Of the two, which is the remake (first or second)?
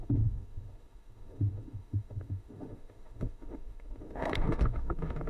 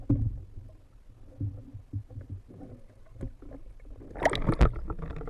first